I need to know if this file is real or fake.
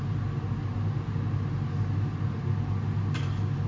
real